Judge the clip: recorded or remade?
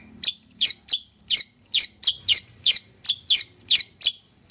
remade